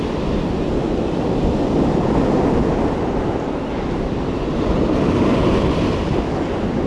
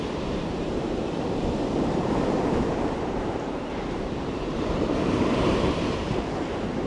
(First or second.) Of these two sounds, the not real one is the second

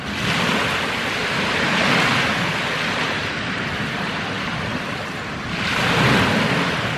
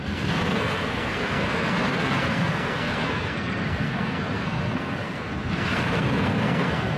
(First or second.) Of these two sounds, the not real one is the second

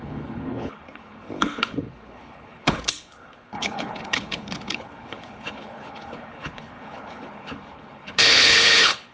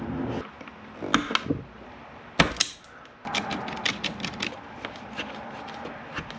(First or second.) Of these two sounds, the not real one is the first